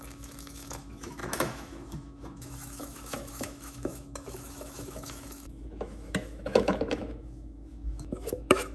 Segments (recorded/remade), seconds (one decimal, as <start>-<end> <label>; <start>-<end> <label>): 0.0-8.7 remade

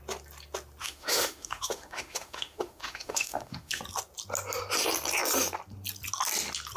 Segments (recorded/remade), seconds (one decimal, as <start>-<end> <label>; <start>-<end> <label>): 0.0-0.8 recorded; 0.8-3.8 remade; 3.8-6.8 recorded

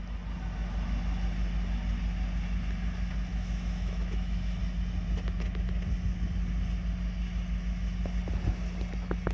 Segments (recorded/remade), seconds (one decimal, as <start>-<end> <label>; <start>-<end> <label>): 0.0-3.3 recorded; 3.3-4.6 remade; 4.6-9.3 recorded

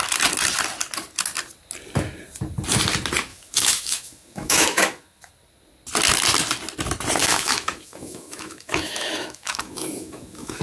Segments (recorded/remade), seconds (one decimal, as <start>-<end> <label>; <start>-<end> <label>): 0.0-3.3 recorded; 3.3-5.3 remade; 5.3-7.2 recorded; 7.2-10.6 remade

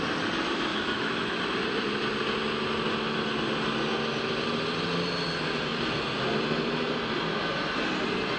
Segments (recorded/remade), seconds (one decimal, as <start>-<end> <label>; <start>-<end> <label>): 0.0-0.7 recorded; 0.7-1.4 remade; 1.4-8.4 recorded

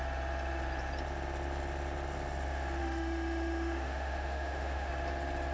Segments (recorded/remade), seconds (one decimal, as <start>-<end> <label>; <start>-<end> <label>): 0.0-2.8 recorded; 2.8-4.9 remade; 4.9-5.5 recorded

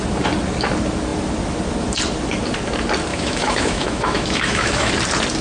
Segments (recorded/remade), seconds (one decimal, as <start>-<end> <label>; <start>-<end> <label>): 0.0-3.1 recorded; 3.1-4.9 remade; 4.9-5.4 recorded

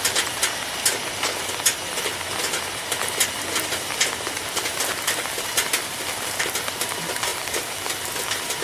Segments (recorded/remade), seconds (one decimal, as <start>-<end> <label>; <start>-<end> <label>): 0.0-8.6 recorded